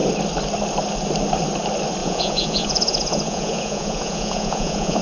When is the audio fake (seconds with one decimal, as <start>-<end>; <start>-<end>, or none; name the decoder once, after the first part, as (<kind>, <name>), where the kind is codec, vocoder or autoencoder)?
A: 2.0-5.0 (vocoder, Vocos)